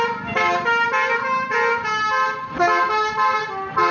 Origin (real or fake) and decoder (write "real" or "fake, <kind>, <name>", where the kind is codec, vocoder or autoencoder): real